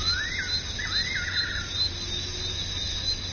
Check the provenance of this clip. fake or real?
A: real